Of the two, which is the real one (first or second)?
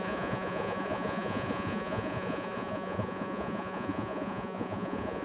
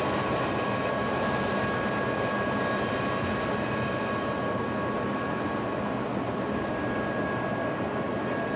second